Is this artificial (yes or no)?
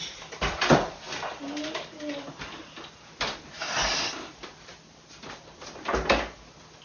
no